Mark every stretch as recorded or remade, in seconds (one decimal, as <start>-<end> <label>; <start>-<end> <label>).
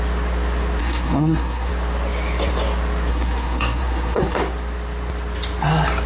0.0-0.8 recorded; 0.8-1.7 remade; 1.7-3.1 recorded; 3.1-4.4 remade; 4.4-6.1 recorded